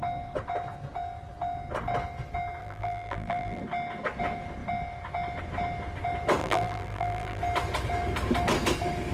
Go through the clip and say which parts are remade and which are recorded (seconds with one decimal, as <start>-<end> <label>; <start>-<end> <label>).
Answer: 0.0-2.6 recorded; 2.6-3.6 remade; 3.6-6.4 recorded; 6.4-7.4 remade; 7.4-9.1 recorded